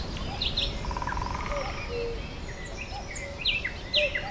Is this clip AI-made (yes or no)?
no